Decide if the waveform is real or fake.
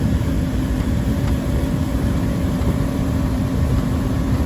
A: fake